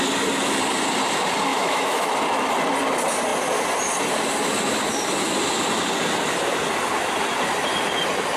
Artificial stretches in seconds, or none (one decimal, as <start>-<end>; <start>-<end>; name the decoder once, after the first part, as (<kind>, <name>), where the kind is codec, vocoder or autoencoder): 1.5-2.1 (autoencoder, DAC-VAE)